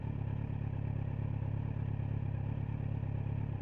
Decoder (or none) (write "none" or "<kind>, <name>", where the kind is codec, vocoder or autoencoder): none